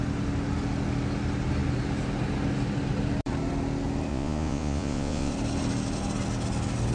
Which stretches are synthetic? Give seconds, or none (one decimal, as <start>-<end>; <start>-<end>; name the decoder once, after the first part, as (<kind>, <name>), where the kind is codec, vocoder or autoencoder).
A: 4.1-5.3 (vocoder, Vocos)